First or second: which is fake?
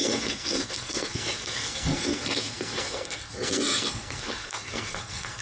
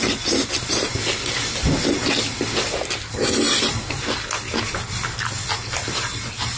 first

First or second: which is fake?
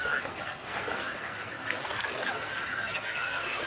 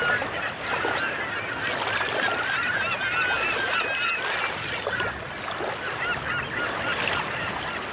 first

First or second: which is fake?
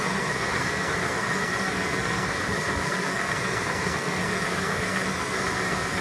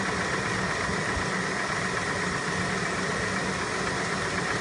first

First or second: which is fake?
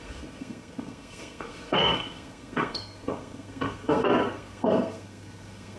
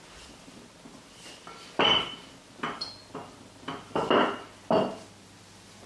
first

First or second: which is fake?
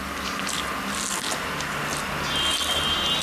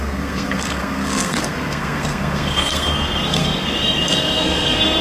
second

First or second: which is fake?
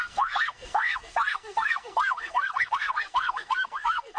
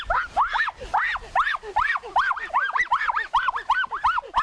first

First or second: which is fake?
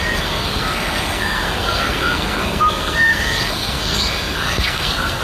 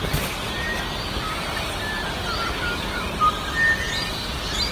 first